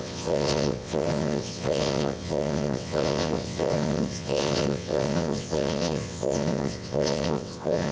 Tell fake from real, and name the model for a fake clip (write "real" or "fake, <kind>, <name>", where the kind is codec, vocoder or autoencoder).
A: fake, vocoder, WaveNeXt